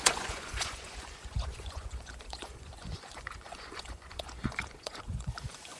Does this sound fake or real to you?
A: fake